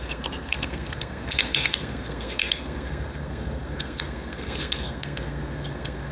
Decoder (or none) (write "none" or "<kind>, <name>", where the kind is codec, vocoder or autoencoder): codec, SNAC